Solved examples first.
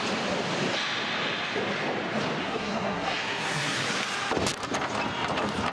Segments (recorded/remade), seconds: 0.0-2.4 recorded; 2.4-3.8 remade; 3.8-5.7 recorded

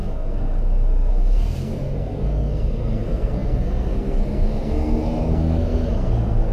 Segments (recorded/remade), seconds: 0.0-6.5 remade

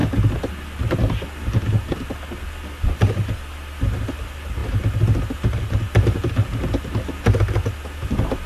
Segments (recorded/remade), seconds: 0.0-8.5 recorded

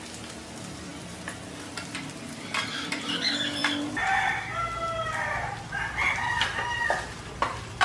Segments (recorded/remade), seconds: 0.0-7.8 recorded